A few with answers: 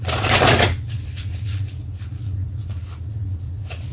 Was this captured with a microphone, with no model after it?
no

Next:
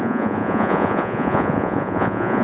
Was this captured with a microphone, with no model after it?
no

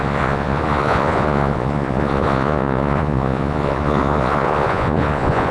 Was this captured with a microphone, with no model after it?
no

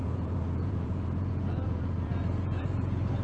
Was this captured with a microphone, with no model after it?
no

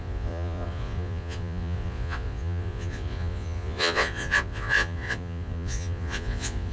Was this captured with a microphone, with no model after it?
no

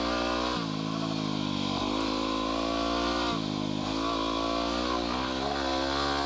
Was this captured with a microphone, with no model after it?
yes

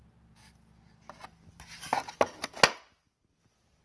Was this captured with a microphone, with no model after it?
yes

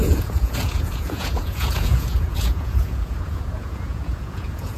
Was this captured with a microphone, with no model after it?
no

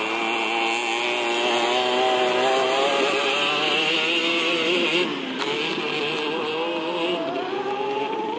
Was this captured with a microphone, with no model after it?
yes